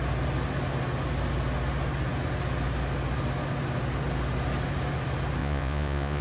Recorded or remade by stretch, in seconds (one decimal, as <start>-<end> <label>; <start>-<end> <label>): 0.0-5.4 recorded; 5.4-6.2 remade